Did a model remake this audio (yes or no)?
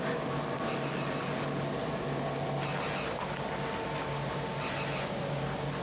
no